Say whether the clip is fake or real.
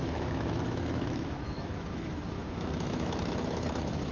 fake